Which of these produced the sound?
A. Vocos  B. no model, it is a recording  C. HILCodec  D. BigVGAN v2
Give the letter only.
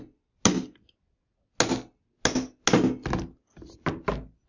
B